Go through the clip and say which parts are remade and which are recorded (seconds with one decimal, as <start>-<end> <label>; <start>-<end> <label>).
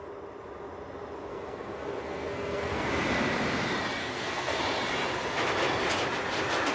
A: 0.0-1.3 recorded; 1.3-2.9 remade; 2.9-4.0 recorded; 4.0-4.6 remade; 4.6-6.7 recorded